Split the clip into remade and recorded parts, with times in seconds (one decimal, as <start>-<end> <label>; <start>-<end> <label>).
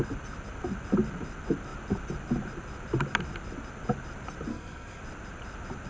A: 0.0-4.5 recorded; 4.5-5.0 remade; 5.0-5.9 recorded